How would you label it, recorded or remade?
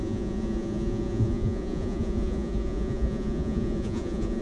remade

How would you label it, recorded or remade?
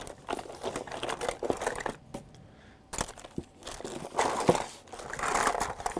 recorded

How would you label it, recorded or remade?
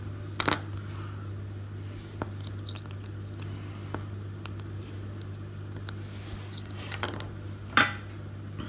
recorded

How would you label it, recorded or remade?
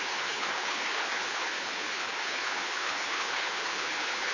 remade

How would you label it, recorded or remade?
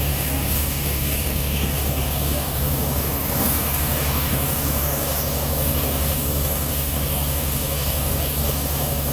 remade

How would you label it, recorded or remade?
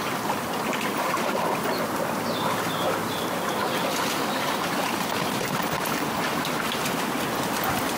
recorded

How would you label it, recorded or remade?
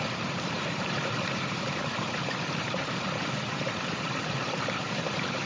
remade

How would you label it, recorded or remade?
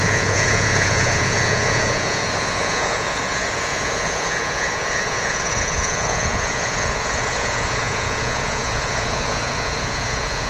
remade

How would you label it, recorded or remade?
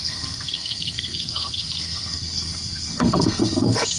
remade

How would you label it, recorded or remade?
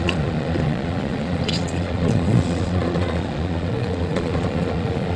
remade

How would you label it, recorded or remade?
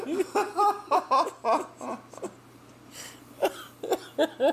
recorded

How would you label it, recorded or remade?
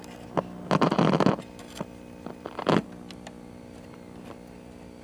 recorded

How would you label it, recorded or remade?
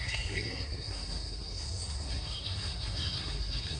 remade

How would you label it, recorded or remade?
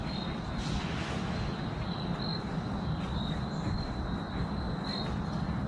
recorded